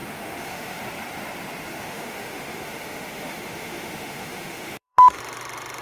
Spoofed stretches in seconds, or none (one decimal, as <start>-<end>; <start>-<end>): 0.0-0.8; 1.7-5.2